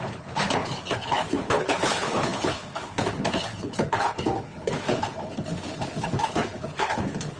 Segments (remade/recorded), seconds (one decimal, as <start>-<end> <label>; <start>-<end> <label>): 0.0-7.4 remade